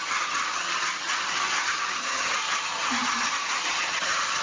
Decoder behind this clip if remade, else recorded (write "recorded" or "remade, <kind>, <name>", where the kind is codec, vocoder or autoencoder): remade, vocoder, HiFi-GAN